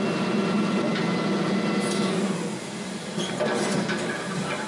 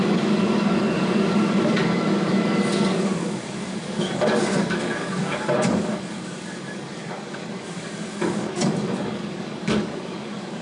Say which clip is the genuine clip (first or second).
first